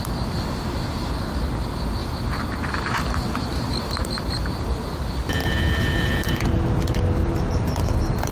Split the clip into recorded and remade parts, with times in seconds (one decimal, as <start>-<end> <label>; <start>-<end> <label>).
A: 0.0-2.0 recorded; 2.0-4.6 remade; 4.6-5.4 recorded; 5.4-6.4 remade; 6.4-7.2 recorded; 7.2-8.3 remade